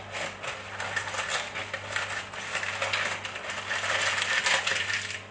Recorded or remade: recorded